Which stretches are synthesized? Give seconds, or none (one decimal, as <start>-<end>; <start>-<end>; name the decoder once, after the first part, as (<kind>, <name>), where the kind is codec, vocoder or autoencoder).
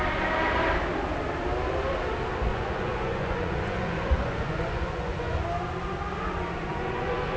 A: 2.5-5.4 (vocoder, Vocos); 6.7-7.4